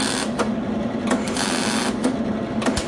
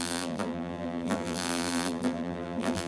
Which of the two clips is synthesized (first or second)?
second